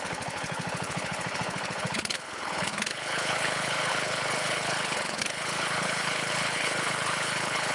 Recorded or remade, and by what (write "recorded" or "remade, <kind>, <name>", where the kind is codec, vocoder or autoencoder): remade, codec, HILCodec